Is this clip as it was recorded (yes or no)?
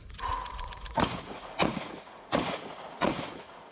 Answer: no